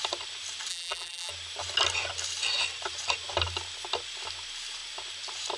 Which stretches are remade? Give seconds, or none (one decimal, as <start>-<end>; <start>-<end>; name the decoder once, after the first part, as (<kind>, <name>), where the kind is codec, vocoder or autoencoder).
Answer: 0.7-1.3 (vocoder, BigVGAN v2)